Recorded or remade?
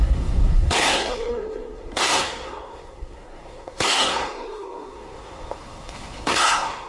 remade